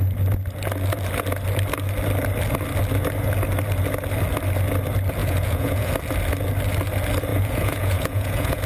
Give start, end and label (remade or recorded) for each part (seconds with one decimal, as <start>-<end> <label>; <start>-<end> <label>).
0.0-5.2 recorded; 5.2-5.9 remade; 5.9-7.3 recorded; 7.3-8.7 remade